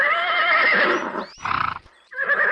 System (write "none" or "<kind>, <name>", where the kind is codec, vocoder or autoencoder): vocoder, BigVGAN v2